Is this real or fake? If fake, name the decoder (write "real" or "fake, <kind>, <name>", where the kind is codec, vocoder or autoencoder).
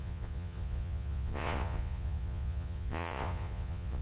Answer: fake, vocoder, Vocos